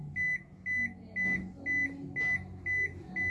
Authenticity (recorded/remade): recorded